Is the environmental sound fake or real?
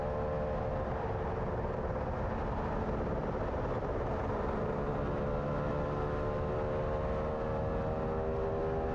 real